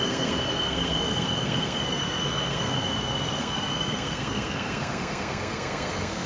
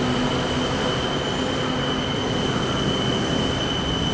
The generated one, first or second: first